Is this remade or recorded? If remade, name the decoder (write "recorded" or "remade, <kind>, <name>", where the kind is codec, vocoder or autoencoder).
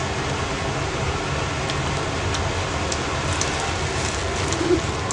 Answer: recorded